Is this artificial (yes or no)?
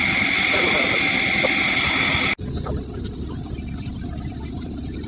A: no